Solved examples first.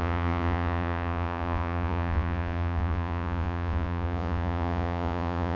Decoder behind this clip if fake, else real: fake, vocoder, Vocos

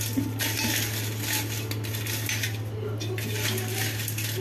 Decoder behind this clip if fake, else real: real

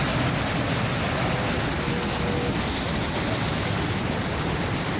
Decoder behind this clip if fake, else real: real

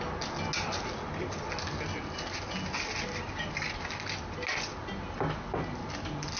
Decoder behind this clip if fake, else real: real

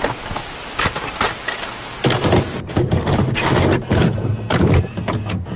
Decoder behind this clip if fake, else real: real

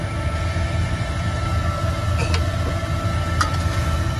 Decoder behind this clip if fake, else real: real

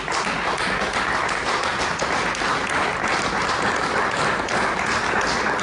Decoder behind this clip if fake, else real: real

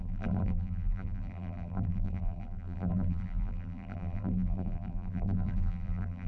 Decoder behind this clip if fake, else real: fake, vocoder, BigVGAN v2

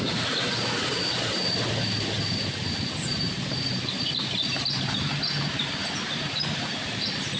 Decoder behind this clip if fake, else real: real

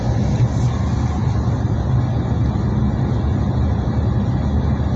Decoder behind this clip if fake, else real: real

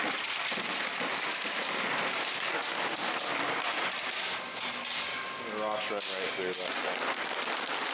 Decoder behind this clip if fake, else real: real